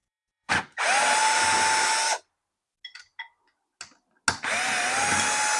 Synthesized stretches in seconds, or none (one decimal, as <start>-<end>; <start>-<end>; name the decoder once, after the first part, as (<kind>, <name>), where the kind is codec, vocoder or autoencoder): 0.0-0.5 (vocoder, Vocos)

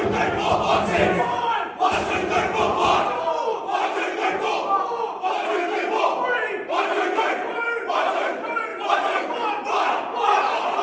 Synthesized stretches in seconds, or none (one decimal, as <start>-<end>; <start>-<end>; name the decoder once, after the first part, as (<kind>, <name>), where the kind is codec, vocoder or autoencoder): none

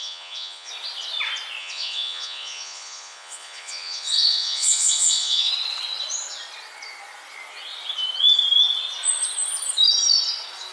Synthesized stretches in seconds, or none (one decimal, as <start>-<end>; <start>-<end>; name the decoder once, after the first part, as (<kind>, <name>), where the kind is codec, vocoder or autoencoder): 0.0-0.7 (vocoder, Vocos); 1.6-5.5

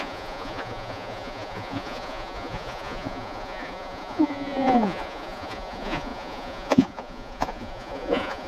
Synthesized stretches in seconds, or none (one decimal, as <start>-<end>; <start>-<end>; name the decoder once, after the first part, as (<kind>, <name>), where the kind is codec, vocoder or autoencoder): 0.0-8.5 (vocoder, Vocos)

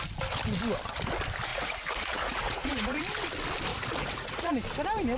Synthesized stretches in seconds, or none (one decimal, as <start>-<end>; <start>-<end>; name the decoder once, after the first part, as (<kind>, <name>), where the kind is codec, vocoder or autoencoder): 1.5-3.0 (vocoder, Vocos); 3.7-4.5

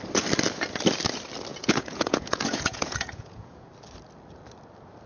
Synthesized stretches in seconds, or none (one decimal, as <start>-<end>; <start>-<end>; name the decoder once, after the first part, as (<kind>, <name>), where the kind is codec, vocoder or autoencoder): 1.5-3.7 (vocoder, Vocos)

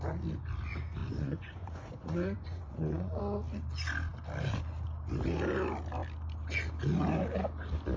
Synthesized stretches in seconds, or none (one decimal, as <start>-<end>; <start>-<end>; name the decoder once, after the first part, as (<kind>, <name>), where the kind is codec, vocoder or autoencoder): 1.0-3.2 (vocoder, Vocos)